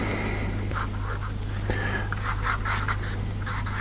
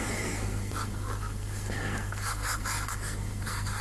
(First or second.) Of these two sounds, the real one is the first